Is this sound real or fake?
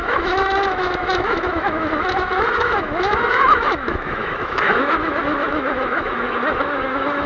fake